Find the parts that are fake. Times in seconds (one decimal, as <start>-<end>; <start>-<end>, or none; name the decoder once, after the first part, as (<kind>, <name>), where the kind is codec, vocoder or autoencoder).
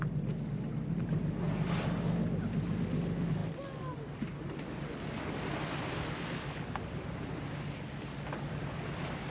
none